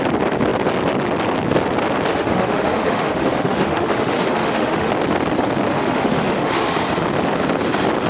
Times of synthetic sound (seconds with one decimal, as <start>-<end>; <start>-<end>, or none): 2.1-4.9; 5.7-6.9